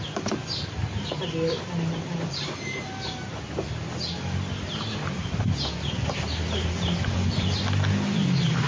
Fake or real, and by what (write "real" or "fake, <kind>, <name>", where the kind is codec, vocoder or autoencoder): fake, vocoder, BigVGAN v2